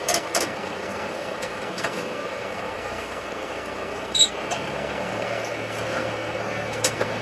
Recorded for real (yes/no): no